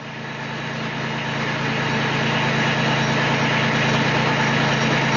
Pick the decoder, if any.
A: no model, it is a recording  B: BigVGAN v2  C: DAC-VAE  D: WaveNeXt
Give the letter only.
A